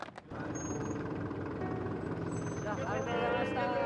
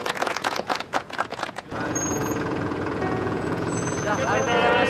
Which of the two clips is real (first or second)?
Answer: first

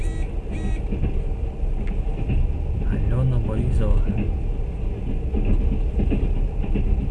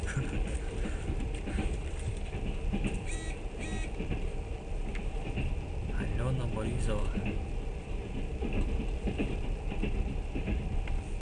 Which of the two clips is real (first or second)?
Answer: first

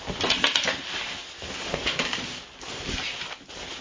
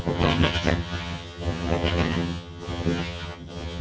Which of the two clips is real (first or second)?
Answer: first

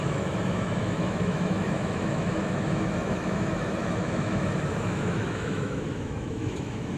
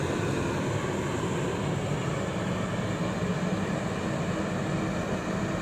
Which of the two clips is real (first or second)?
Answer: second